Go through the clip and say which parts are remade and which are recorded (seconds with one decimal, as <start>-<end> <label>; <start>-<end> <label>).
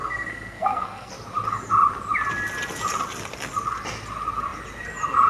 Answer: 0.0-1.1 remade; 1.1-5.3 recorded